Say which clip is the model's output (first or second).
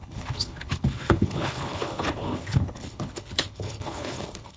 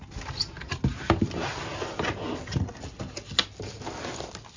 first